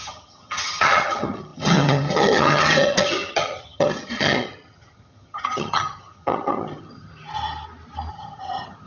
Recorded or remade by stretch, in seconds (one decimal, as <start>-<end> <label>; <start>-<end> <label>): 0.0-7.1 remade; 7.1-8.1 recorded; 8.1-8.9 remade